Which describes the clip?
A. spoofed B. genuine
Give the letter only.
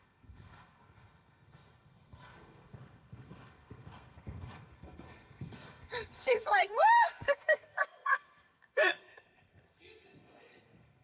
A